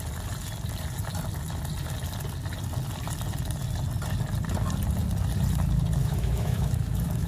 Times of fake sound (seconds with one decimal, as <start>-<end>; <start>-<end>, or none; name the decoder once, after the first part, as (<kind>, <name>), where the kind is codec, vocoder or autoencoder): 6.0-7.3 (autoencoder, DAC-VAE)